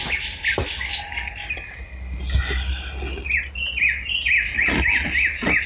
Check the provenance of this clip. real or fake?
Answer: real